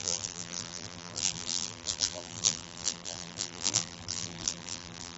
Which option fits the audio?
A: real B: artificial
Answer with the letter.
B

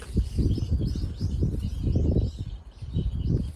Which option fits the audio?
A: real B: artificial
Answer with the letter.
A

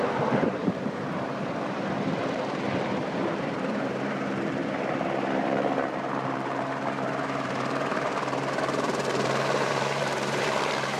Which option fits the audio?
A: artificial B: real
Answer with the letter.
A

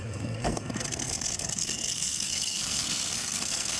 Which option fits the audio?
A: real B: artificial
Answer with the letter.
B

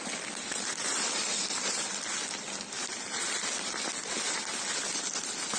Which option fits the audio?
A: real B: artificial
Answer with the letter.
A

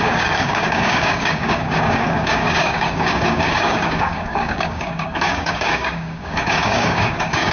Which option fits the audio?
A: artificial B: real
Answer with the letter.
A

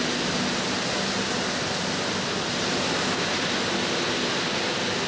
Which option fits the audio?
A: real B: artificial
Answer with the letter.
A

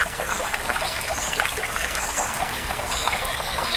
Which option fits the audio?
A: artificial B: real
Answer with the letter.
A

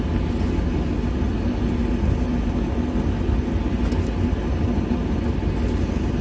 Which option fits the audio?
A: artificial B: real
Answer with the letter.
B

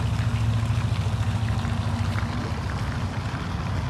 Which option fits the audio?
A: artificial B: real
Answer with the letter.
B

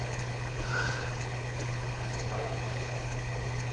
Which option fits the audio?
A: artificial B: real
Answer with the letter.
A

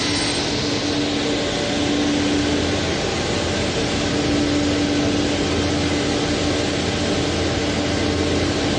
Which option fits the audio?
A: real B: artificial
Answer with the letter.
A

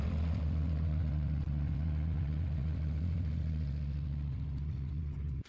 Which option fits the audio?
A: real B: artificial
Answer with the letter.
B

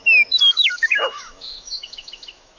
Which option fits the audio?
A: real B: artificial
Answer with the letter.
B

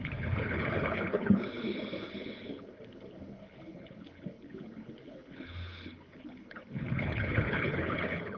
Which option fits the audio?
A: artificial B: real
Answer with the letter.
A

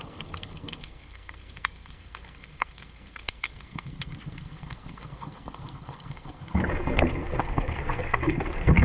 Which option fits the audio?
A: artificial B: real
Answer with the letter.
A